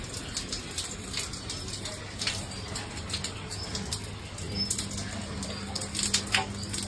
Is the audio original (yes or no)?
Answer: yes